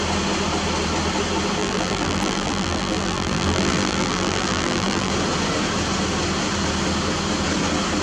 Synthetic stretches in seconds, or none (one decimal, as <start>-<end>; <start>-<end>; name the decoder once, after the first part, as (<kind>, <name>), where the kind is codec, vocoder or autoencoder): 1.6-5.1 (vocoder, BigVGAN v2)